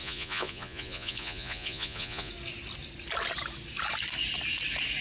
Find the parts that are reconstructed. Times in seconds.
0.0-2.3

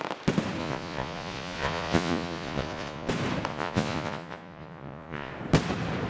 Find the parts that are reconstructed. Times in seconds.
0.6-3.1; 3.5-5.3

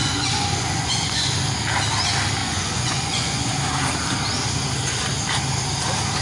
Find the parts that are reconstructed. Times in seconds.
0.0-1.4; 2.4-3.5

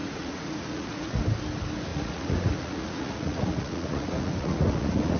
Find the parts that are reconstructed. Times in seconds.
0.0-1.2; 1.9-5.2

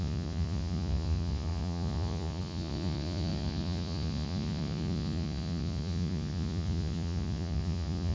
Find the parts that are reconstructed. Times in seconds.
0.0-8.1